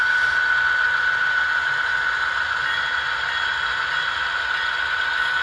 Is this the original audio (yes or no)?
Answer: yes